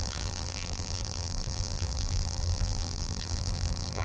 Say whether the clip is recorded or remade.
remade